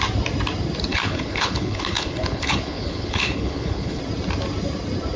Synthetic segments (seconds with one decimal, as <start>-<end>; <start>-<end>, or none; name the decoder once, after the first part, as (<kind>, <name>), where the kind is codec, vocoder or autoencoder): 0.9-4.0 (codec, HILCodec)

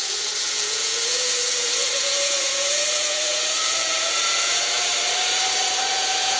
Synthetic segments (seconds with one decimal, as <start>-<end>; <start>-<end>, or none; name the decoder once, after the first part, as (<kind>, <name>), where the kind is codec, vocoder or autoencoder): 0.0-4.9 (vocoder, Vocos); 5.9-6.4

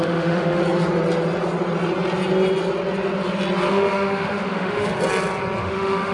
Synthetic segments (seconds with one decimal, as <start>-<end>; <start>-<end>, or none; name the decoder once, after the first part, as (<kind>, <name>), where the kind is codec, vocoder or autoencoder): 0.0-0.6 (autoencoder, DAC-VAE); 3.7-4.9; 5.6-6.1

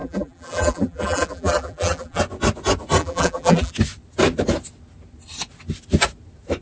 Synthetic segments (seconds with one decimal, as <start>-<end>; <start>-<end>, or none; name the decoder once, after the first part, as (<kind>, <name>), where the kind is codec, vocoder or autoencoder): 0.0-2.2 (vocoder, BigVGAN v2); 3.0-3.7

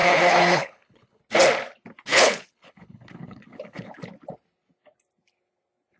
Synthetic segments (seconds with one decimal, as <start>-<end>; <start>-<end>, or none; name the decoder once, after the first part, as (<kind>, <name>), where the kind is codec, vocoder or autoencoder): 0.0-1.2 (codec, HILCodec); 2.1-3.9

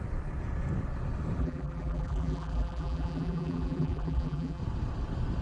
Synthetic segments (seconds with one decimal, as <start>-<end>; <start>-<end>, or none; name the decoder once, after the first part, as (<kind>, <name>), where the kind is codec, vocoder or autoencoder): 1.4-4.6 (vocoder, BigVGAN v2)

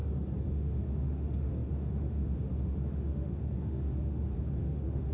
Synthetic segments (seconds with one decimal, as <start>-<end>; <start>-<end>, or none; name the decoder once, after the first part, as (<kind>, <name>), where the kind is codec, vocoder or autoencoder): 0.5-5.1 (autoencoder, DAC-VAE)